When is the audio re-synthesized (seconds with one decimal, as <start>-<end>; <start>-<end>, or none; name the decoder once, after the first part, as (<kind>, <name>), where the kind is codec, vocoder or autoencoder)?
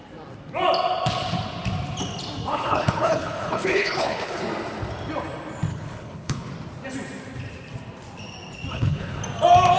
2.5-4.4 (codec, HILCodec); 5.7-6.5; 8.7-9.2